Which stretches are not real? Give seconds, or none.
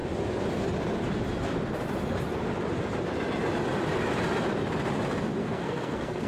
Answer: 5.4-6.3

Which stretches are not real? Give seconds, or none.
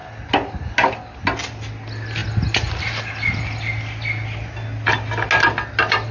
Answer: none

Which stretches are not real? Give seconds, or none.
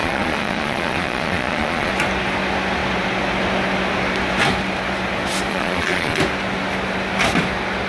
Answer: 0.0-1.9; 5.5-6.2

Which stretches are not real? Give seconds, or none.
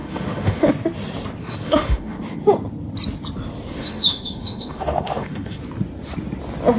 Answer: 0.0-0.7; 1.4-2.2; 3.8-5.6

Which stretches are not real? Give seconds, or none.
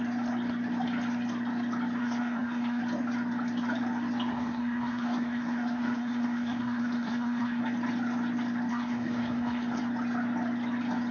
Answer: 2.0-2.8; 4.3-7.6; 8.7-9.8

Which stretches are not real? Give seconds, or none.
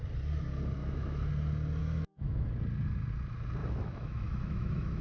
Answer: 0.8-1.3; 1.8-2.5; 3.6-5.0